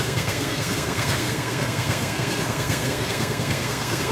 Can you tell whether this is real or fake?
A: fake